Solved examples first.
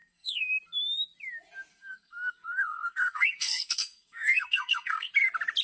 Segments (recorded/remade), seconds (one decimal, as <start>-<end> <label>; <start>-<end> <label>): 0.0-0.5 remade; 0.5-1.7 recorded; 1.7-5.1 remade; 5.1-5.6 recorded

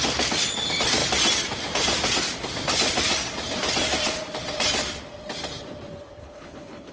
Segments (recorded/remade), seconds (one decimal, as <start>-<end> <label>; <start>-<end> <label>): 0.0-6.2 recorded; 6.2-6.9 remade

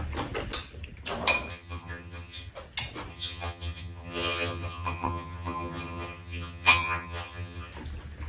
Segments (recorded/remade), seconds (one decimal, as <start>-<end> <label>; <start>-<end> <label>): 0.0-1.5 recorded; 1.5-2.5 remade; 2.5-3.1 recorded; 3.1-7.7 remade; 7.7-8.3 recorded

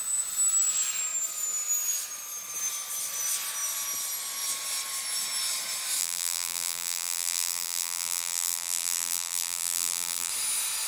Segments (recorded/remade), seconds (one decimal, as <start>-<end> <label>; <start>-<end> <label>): 0.0-6.0 recorded; 6.0-10.3 remade; 10.3-10.9 recorded

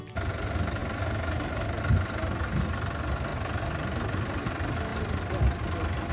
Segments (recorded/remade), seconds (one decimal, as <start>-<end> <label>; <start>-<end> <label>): 0.0-0.8 recorded; 0.8-1.8 remade; 1.8-6.1 recorded

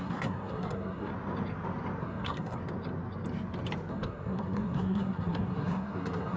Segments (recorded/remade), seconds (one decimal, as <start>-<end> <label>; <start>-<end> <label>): 0.0-1.1 remade; 1.1-2.0 recorded; 2.0-2.6 remade; 2.6-3.9 recorded; 3.9-6.4 remade

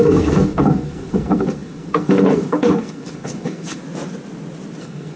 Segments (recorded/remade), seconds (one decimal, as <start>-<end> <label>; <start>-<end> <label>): 0.0-3.8 remade; 3.8-4.8 recorded; 4.8-5.2 remade